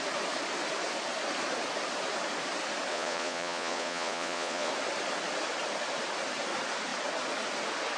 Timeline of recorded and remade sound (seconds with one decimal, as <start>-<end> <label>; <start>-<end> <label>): 0.0-2.9 recorded; 2.9-4.7 remade; 4.7-8.0 recorded